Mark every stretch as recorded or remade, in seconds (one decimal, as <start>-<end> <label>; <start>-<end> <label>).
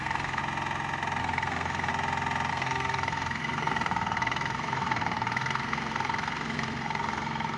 0.0-0.4 remade; 0.4-1.2 recorded; 1.2-1.9 remade; 1.9-2.5 recorded; 2.5-7.6 remade